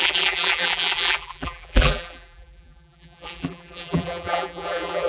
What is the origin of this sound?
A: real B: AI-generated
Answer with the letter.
B